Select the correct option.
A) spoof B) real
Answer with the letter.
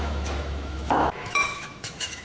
A